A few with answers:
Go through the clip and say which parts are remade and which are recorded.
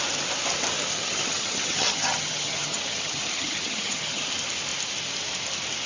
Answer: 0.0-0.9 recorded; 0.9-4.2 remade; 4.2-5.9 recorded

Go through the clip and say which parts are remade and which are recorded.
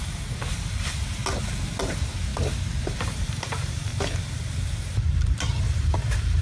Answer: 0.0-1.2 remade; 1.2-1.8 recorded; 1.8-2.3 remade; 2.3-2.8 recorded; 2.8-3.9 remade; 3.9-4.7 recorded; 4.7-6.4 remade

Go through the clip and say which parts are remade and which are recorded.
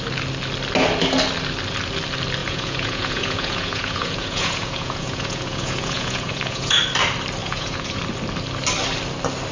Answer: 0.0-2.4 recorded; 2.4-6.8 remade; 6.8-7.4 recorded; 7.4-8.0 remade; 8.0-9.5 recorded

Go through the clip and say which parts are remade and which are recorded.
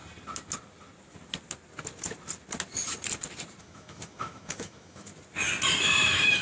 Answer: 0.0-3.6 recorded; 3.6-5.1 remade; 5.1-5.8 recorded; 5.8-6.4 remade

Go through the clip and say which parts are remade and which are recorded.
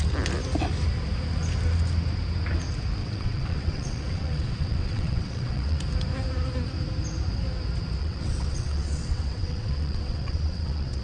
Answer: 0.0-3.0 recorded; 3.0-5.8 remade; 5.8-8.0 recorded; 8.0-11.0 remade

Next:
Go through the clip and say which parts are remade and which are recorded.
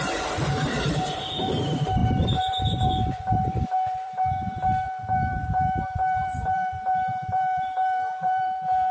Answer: 0.0-8.9 remade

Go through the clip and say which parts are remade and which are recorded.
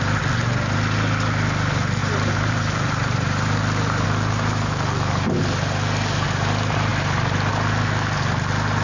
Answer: 0.0-2.0 recorded; 2.0-3.6 remade; 3.6-8.8 recorded